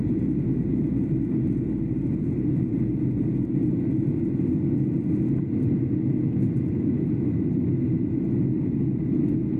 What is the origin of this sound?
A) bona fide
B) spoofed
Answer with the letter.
A